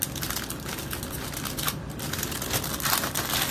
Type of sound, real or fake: fake